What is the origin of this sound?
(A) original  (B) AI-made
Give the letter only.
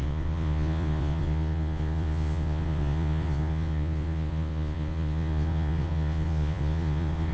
B